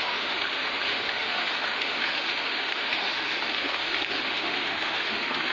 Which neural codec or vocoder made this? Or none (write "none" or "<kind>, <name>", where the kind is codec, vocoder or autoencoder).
autoencoder, DAC-VAE